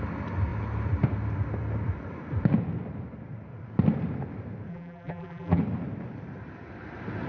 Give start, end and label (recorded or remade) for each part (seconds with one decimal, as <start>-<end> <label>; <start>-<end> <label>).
0.0-4.7 recorded; 4.7-5.6 remade; 5.6-7.3 recorded